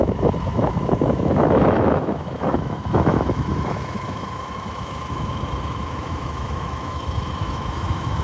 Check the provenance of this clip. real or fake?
fake